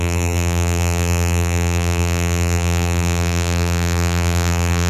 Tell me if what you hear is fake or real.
fake